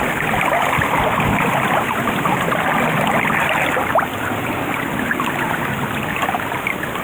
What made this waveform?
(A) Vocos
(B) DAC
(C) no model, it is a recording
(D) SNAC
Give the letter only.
C